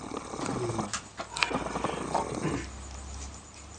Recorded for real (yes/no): yes